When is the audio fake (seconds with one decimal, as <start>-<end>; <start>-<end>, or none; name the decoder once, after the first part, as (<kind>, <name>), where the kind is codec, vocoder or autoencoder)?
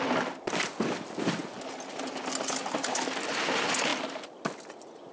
none